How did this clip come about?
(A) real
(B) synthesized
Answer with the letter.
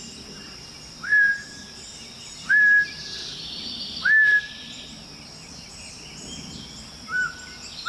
A